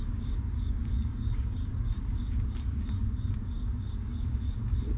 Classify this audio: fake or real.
fake